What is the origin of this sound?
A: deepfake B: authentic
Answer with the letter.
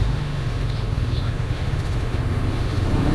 A